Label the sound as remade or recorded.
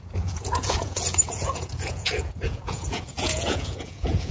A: remade